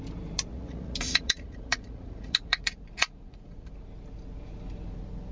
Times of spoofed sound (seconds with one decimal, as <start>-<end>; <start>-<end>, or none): 0.5-3.7